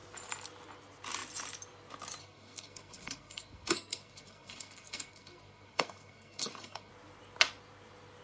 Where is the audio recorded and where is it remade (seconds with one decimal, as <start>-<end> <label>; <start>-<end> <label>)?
0.0-2.2 recorded; 2.2-6.9 remade; 6.9-8.2 recorded